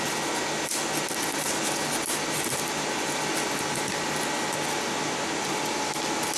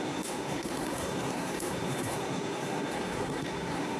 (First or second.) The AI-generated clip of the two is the second